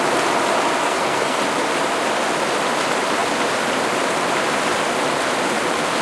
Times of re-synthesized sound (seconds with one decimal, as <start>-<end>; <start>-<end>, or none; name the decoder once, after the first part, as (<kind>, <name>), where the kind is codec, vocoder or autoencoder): 0.8-1.4 (codec, SNAC)